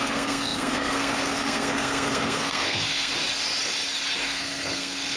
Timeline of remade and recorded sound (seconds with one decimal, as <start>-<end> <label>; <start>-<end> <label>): 0.0-3.1 remade; 3.1-4.2 recorded; 4.2-5.2 remade